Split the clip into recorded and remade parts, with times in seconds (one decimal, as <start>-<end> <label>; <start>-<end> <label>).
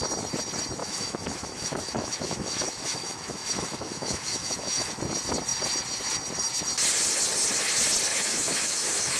0.0-0.8 recorded; 0.8-5.0 remade; 5.0-8.1 recorded; 8.1-9.2 remade